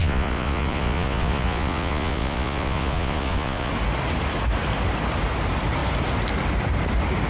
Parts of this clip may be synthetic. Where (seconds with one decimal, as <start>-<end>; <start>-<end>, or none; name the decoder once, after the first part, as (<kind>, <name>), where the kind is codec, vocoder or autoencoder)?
0.0-3.7 (vocoder, Vocos)